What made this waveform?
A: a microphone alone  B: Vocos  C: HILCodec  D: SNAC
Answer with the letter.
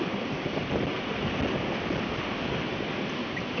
A